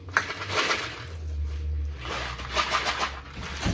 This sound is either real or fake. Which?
real